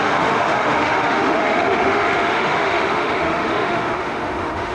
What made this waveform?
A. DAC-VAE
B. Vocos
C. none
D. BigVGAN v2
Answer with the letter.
A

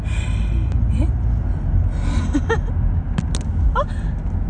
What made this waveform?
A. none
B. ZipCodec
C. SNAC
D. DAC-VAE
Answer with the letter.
A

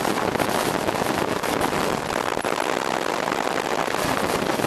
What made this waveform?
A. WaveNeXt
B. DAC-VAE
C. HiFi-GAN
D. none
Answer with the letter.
D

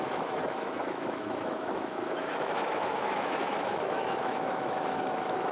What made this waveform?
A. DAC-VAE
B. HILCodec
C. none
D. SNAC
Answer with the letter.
A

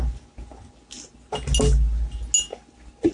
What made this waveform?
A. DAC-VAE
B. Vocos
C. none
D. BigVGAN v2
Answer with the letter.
C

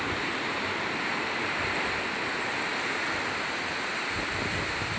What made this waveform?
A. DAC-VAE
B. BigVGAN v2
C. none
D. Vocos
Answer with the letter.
C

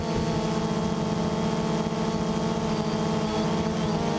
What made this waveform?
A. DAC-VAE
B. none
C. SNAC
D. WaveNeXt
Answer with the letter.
B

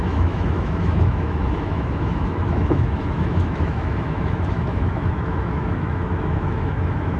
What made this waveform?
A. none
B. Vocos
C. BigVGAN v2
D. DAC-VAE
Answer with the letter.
D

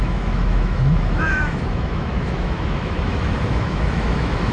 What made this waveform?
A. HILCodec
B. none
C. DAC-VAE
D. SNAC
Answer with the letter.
C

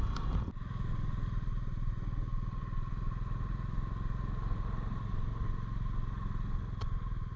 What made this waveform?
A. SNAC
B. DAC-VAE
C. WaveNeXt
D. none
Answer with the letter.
D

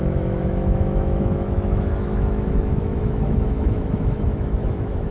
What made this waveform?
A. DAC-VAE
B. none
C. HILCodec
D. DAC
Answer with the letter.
A